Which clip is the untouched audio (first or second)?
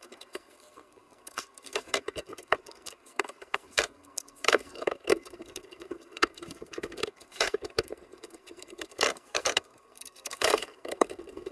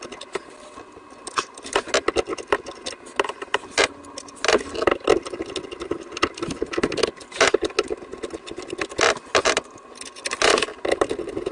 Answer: second